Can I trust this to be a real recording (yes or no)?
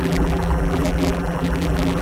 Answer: no